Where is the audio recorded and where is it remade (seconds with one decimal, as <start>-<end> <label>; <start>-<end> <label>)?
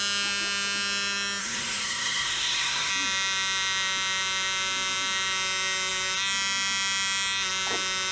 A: 0.0-1.4 recorded; 1.4-2.9 remade; 2.9-8.1 recorded